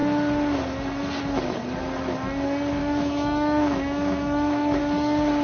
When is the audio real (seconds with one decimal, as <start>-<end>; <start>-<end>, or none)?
0.0-2.8; 4.8-5.4